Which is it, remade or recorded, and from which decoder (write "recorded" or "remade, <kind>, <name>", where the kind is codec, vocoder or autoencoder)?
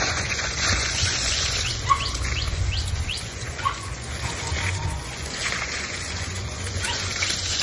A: remade, vocoder, Vocos